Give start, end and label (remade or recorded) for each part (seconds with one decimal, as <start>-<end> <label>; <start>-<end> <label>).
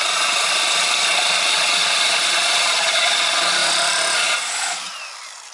0.0-1.8 recorded; 1.8-3.0 remade; 3.0-3.6 recorded; 3.6-4.5 remade; 4.5-5.5 recorded